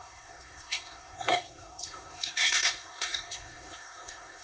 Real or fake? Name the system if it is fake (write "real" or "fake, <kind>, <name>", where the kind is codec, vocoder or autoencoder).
fake, codec, SNAC